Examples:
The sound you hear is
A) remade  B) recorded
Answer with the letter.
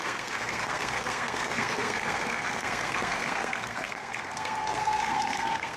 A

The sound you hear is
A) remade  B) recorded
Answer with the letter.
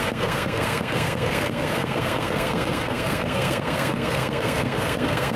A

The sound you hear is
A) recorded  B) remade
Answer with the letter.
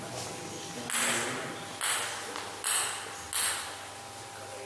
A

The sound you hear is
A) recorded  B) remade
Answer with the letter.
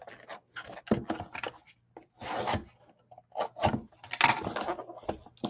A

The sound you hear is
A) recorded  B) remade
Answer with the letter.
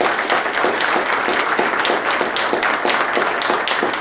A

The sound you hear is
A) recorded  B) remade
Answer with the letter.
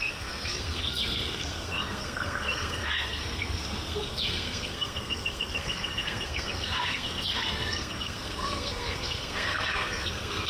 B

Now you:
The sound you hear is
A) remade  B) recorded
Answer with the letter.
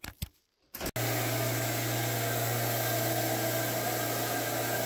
B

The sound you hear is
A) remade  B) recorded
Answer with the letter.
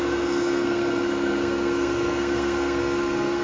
A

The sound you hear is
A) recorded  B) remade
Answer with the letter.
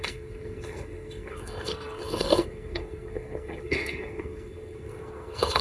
B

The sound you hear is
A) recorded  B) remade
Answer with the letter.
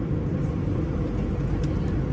A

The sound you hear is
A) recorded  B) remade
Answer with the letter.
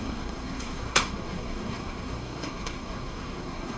B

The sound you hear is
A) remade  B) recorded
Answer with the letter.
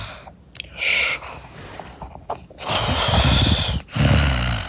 B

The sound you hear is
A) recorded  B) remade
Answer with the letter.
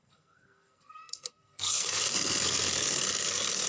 B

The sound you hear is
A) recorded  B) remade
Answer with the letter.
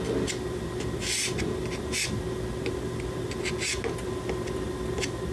A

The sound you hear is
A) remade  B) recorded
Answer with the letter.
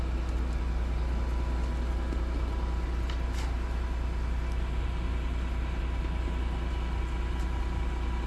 B